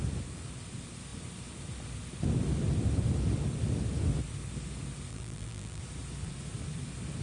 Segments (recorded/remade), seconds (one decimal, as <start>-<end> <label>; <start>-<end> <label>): 0.0-5.1 recorded; 5.1-5.8 remade; 5.8-7.2 recorded